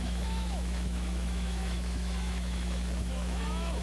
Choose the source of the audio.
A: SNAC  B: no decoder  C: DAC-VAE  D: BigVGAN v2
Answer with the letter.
C